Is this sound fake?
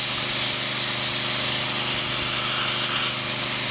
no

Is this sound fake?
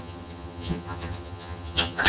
yes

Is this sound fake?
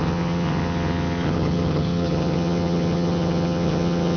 yes